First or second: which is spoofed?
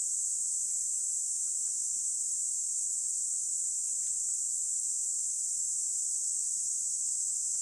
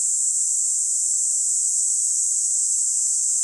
first